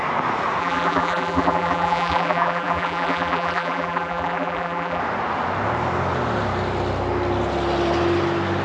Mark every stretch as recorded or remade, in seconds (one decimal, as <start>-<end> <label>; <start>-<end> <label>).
0.0-0.6 recorded; 0.6-5.0 remade; 5.0-8.6 recorded